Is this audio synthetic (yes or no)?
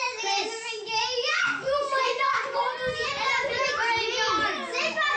no